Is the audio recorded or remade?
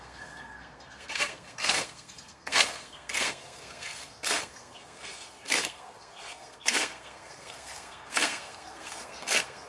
remade